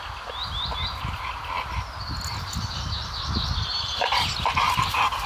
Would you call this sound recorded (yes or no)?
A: yes